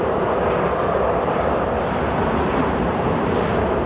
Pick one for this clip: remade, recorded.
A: recorded